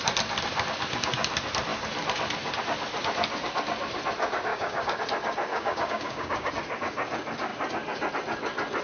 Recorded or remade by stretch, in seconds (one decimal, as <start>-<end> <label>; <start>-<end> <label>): 0.0-4.5 recorded; 4.5-5.0 remade; 5.0-5.5 recorded; 5.5-6.5 remade; 6.5-8.8 recorded